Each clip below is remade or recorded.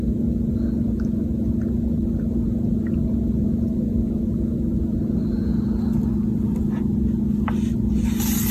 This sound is recorded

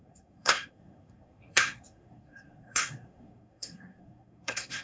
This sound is remade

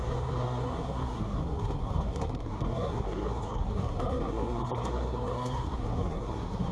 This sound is remade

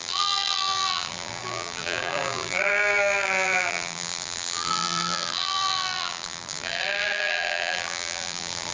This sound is remade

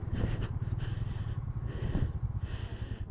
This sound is recorded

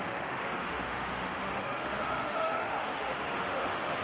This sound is remade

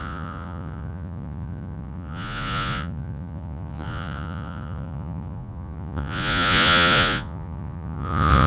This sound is remade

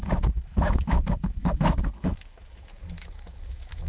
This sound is remade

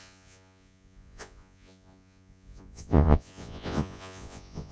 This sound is remade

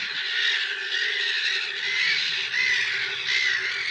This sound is recorded